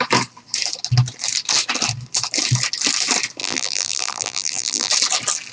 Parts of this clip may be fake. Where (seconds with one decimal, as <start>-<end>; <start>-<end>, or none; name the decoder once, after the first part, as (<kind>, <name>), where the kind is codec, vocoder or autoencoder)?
3.4-4.9 (vocoder, BigVGAN v2)

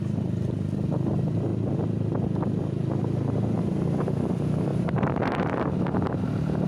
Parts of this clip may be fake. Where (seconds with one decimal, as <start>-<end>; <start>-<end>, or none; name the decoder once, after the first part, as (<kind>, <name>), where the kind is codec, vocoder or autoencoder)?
4.7-6.7 (vocoder, BigVGAN v2)

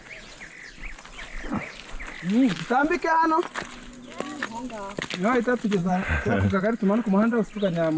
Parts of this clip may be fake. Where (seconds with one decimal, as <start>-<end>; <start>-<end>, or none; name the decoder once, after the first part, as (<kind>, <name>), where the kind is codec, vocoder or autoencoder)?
5.8-6.6 (vocoder, BigVGAN v2)